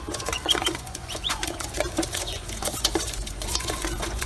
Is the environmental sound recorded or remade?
remade